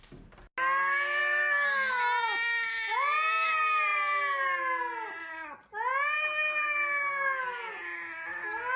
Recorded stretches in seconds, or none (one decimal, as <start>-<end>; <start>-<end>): 0.0-8.8